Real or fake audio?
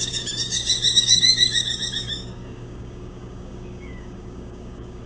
fake